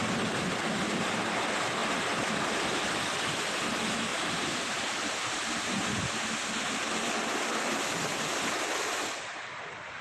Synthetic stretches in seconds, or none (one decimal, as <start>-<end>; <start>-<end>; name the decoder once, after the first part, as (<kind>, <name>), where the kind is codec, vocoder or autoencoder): 1.8-2.9 (vocoder, BigVGAN v2); 4.1-6.3